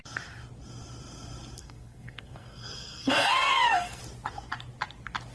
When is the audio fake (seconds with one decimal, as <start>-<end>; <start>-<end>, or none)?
1.6-4.0